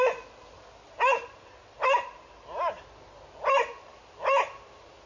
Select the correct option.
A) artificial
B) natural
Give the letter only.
B